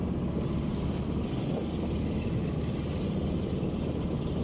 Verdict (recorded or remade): recorded